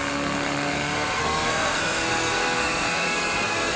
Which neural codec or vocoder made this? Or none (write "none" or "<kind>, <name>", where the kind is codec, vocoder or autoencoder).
codec, SNAC